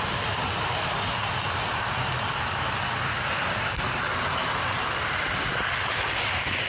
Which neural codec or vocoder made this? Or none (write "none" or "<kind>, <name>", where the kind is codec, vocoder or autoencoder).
none